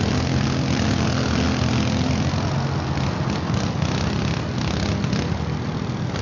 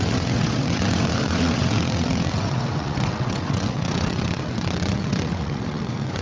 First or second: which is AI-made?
second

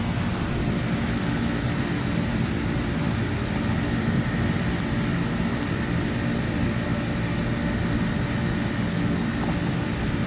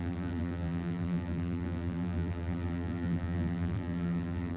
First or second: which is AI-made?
second